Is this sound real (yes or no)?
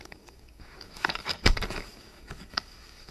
no